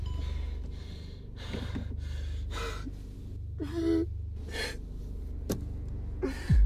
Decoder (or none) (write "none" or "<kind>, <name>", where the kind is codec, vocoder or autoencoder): none